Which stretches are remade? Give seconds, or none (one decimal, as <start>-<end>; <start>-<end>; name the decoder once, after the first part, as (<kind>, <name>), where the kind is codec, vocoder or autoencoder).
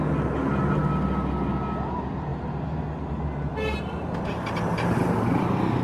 3.5-4.1 (vocoder, BigVGAN v2)